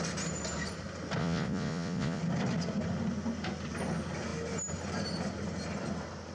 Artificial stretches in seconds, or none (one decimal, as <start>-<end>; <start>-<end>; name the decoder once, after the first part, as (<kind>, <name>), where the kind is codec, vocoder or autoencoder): 1.2-2.2 (vocoder, Vocos)